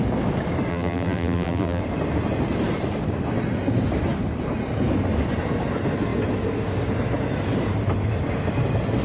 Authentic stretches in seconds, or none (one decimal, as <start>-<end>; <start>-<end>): 0.0-0.7; 1.8-9.0